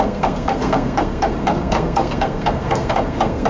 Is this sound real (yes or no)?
no